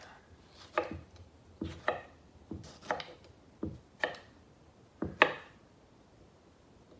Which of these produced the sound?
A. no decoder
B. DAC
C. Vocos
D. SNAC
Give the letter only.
A